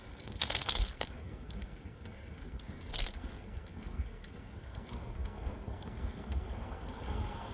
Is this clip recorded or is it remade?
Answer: remade